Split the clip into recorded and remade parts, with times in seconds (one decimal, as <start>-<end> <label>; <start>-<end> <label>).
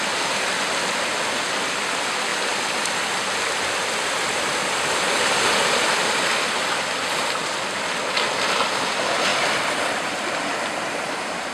0.0-2.3 recorded; 2.3-3.4 remade; 3.4-9.3 recorded; 9.3-10.4 remade; 10.4-11.5 recorded